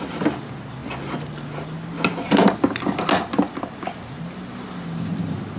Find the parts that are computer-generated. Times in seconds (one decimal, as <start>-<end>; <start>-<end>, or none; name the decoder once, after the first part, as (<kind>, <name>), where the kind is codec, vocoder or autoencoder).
none